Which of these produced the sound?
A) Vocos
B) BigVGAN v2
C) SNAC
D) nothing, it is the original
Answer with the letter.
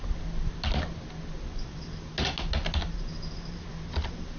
D